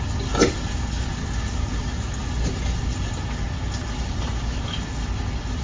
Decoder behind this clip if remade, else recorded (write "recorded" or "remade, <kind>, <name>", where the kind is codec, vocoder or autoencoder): recorded